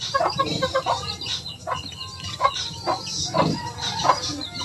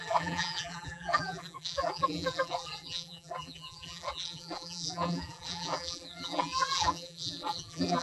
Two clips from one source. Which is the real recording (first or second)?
first